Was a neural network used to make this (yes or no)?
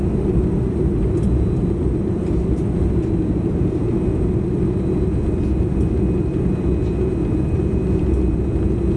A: no